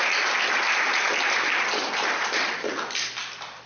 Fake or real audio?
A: real